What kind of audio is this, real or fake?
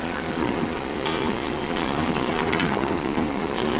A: fake